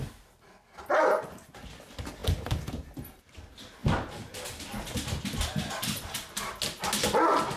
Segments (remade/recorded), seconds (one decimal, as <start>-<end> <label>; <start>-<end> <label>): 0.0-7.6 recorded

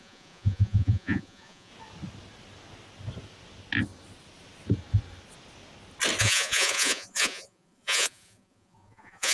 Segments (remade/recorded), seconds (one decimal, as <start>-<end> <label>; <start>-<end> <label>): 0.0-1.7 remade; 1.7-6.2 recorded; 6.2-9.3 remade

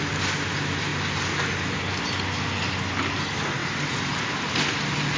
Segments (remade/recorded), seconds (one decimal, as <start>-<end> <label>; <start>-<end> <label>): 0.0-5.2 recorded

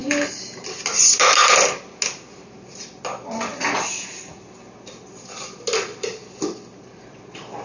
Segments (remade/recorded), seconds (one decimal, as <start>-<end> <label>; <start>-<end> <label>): 0.0-0.7 remade; 0.7-7.6 recorded

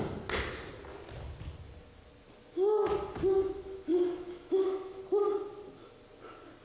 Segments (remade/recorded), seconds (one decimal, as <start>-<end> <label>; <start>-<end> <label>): 0.0-3.9 recorded; 3.9-5.0 remade; 5.0-6.6 recorded

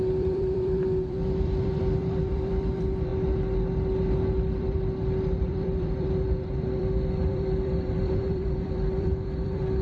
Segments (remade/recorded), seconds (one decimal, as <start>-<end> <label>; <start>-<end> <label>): 0.0-3.1 remade; 3.1-4.5 recorded; 4.5-9.8 remade

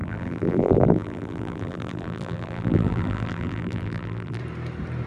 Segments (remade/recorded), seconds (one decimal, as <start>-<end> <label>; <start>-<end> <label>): 0.0-4.4 remade; 4.4-5.1 recorded